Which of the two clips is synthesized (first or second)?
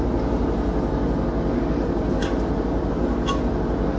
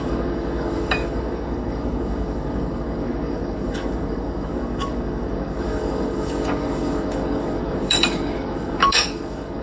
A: second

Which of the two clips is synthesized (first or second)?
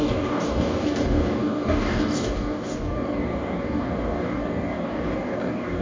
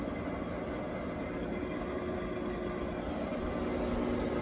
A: first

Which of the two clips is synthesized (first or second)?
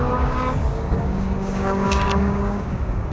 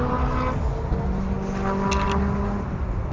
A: first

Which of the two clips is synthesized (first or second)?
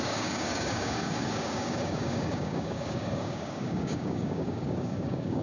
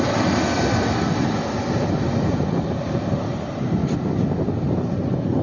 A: first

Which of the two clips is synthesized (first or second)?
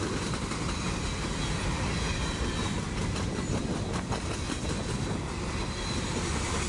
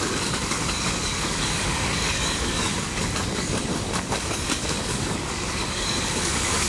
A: second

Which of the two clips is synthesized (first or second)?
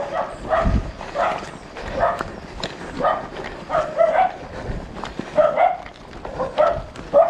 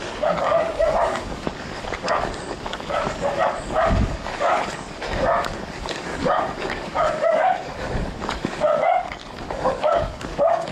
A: second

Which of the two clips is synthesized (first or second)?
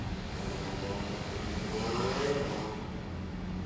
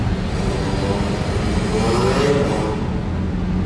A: first